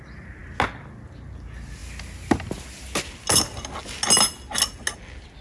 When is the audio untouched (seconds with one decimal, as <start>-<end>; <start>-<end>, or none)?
0.0-5.4